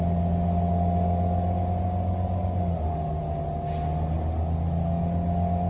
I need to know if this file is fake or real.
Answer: real